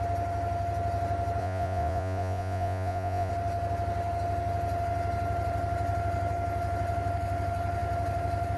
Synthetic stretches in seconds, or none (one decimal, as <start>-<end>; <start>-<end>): 1.4-3.3